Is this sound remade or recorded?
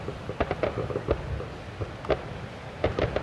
recorded